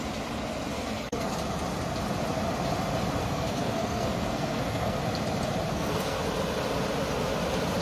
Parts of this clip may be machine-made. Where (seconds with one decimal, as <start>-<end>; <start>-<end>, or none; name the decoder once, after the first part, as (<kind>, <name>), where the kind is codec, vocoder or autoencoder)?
0.7-1.3 (codec, SNAC); 3.2-5.0; 5.7-6.2